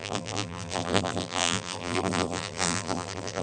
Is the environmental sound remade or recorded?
remade